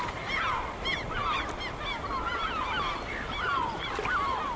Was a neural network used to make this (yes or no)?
no